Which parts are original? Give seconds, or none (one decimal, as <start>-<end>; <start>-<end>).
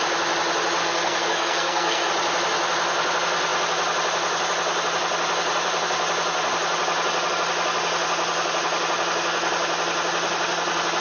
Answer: 0.0-0.8; 2.1-11.0